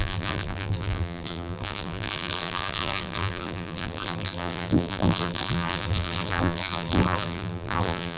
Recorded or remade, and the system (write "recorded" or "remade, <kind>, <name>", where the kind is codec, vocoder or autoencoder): remade, vocoder, BigVGAN v2